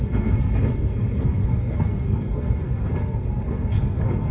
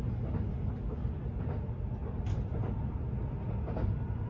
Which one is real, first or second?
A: second